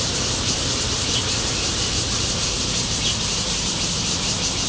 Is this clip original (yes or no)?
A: no